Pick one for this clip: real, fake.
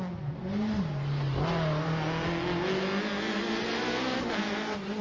real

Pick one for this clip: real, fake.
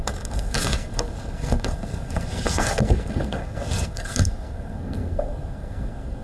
fake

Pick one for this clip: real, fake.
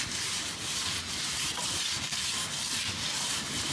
real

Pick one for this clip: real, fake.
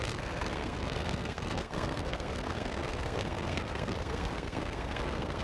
fake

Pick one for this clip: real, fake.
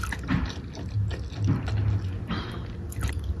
real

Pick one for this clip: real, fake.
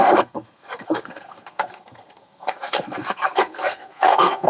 fake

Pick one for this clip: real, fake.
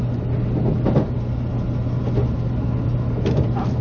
real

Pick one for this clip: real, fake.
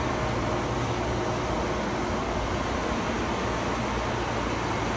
real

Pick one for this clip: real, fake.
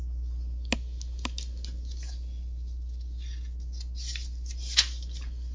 real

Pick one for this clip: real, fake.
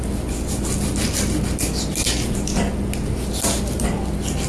real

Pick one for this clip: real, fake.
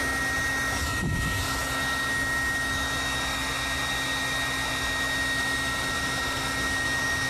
real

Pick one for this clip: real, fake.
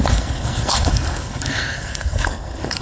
fake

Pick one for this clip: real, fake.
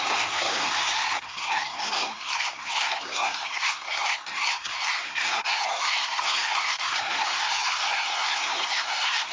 fake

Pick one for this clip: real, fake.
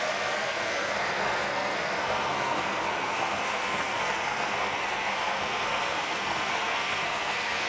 fake